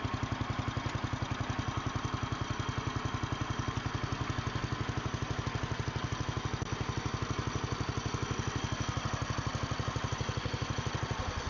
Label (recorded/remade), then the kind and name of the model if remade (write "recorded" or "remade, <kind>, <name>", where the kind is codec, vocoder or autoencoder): recorded